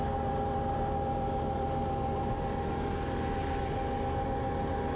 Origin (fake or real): real